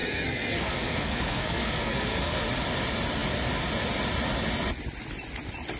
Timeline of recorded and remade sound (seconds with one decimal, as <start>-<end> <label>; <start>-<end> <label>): 0.0-2.4 remade; 2.4-5.8 recorded